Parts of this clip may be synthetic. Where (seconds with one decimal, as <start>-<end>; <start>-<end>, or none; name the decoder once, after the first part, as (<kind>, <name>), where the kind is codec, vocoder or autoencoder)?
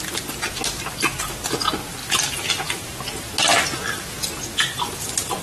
2.0-2.7 (vocoder, BigVGAN v2)